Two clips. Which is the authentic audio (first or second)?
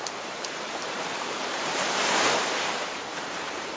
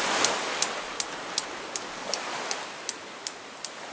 second